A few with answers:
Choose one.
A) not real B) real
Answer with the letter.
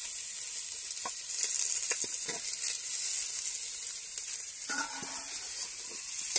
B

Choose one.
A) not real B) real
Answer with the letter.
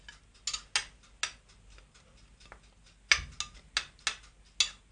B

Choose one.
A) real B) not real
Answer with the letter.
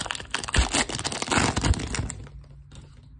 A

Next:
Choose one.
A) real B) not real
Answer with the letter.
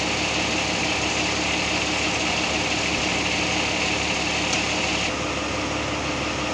A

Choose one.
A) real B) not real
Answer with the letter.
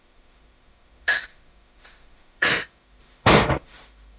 B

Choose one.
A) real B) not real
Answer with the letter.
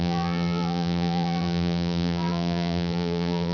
B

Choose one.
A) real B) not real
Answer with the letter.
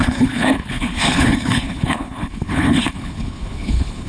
B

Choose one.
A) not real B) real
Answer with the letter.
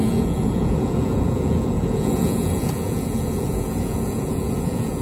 A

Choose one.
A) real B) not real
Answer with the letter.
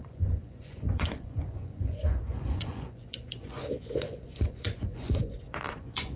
B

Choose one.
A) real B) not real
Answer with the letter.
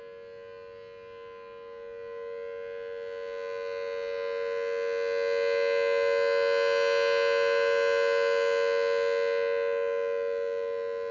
A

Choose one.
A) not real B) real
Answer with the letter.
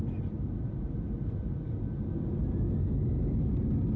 B